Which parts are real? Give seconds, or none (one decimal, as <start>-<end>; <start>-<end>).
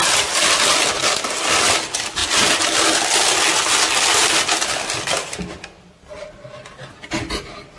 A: 0.0-7.8